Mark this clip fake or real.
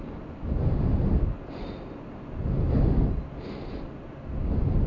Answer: real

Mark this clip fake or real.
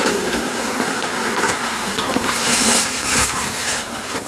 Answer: fake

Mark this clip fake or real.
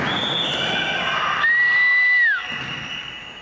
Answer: real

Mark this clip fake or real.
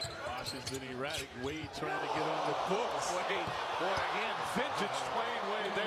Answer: fake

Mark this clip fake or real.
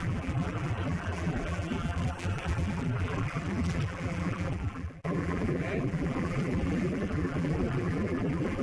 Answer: fake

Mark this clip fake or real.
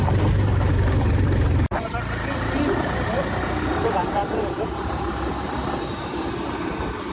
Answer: fake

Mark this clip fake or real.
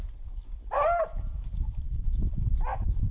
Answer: real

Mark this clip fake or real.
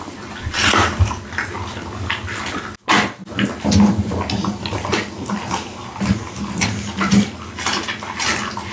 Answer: real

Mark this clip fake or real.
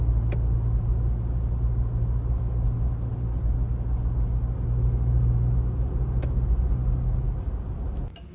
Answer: real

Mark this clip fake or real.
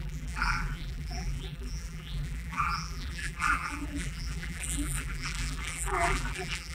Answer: fake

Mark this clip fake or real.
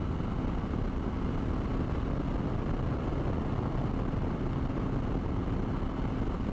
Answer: real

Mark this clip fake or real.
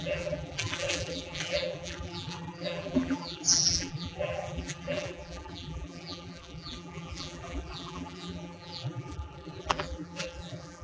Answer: fake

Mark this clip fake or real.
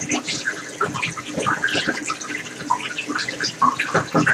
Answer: real